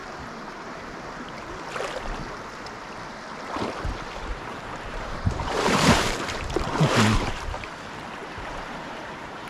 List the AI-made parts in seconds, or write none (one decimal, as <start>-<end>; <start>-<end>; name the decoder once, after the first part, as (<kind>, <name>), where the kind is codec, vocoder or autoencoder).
0.0-1.5 (vocoder, BigVGAN v2); 4.3-7.7; 8.2-9.5